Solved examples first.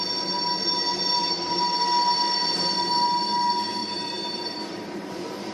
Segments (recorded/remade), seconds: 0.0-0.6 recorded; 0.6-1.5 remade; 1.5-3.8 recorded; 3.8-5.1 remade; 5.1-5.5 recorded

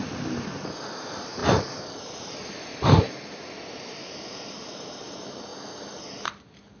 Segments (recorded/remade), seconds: 0.0-6.8 remade

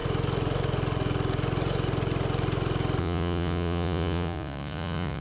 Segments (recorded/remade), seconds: 0.0-3.0 recorded; 3.0-5.2 remade

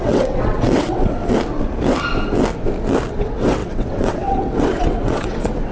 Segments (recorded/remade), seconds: 0.0-1.2 remade; 1.2-3.2 recorded; 3.2-5.7 remade

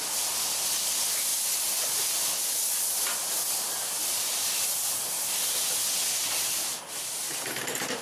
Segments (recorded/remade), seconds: 0.0-8.0 recorded

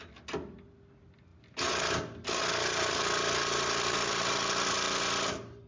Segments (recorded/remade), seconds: 0.0-5.7 recorded

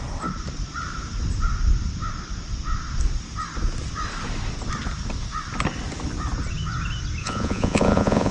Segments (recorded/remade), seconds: 0.0-7.2 recorded; 7.2-8.3 remade